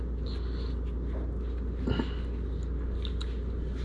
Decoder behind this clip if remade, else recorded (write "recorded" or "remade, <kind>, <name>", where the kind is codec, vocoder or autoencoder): recorded